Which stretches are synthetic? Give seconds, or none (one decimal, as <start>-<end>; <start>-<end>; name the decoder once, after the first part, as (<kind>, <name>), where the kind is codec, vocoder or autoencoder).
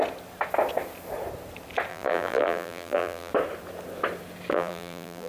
1.9-3.3 (vocoder, BigVGAN v2); 4.5-5.3